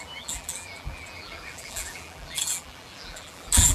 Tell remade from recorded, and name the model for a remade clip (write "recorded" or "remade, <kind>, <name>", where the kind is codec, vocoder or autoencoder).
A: remade, vocoder, BigVGAN v2